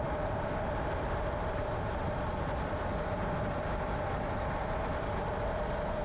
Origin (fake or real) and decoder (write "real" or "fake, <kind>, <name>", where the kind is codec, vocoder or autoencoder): real